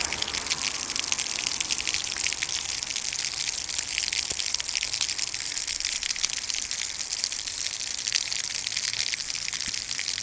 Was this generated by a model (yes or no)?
no